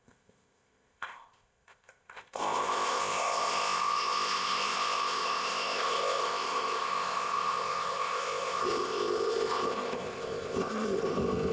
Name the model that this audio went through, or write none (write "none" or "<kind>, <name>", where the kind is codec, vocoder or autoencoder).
codec, ZipCodec